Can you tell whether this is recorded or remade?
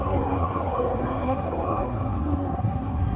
remade